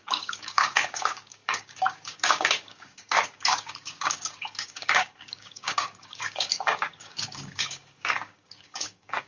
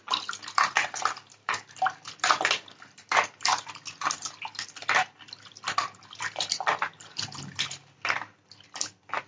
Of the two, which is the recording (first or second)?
second